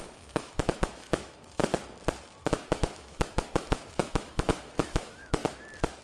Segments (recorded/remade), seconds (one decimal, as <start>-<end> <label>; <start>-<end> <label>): 0.0-1.7 remade; 1.7-2.4 recorded; 2.4-5.4 remade; 5.4-6.0 recorded